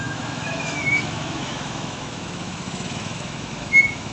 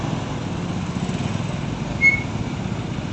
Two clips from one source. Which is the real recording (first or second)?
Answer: second